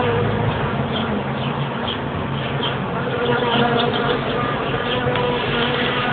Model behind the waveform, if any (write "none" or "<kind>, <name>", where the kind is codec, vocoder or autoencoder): none